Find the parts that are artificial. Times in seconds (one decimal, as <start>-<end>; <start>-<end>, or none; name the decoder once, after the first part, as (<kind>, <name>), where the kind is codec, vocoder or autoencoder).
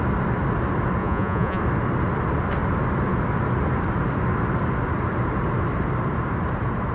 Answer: 1.0-1.6 (vocoder, Vocos)